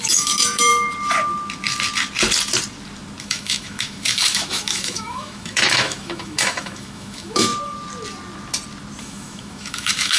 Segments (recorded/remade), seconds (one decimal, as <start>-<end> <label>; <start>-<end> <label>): 0.0-0.7 remade; 0.7-3.2 recorded; 3.2-7.5 remade; 7.5-9.0 recorded; 9.0-10.2 remade